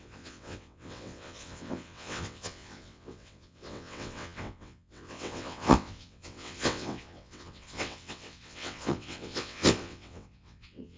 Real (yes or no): no